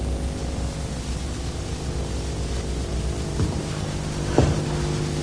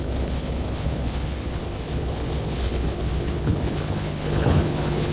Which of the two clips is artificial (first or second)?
second